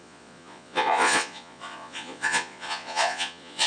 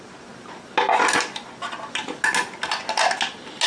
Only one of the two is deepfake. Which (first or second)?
first